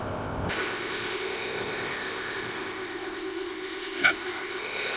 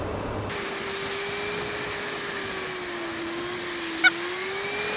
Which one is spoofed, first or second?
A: first